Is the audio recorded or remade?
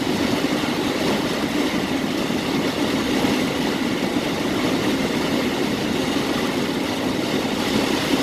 recorded